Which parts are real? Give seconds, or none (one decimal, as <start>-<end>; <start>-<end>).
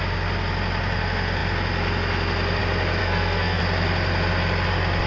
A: 0.0-3.0; 3.6-5.1